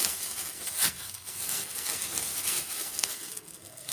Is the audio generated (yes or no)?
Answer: yes